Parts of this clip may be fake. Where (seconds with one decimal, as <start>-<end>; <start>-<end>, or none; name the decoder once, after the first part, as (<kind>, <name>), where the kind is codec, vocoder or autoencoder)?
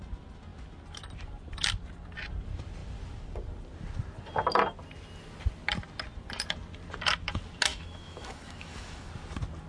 7.7-9.1 (autoencoder, DAC-VAE)